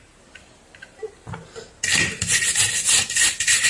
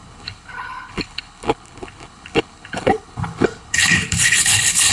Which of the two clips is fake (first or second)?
second